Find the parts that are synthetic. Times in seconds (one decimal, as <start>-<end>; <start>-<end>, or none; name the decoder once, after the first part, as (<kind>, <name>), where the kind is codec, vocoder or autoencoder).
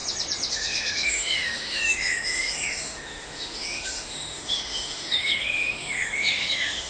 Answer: 0.5-6.9 (autoencoder, DAC-VAE)